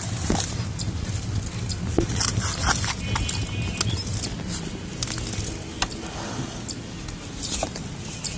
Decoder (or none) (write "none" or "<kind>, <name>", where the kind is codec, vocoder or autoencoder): none